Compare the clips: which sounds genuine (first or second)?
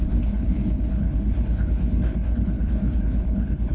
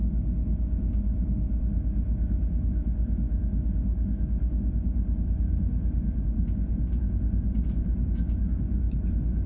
second